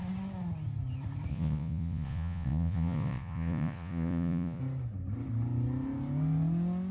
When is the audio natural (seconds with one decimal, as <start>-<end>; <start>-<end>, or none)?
0.0-1.3; 4.6-6.9